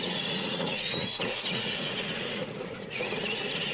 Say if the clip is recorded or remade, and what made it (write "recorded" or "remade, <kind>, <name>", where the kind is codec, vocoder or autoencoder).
remade, vocoder, Vocos